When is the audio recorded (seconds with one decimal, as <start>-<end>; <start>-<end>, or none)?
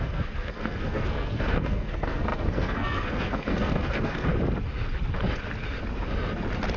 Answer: 4.3-6.8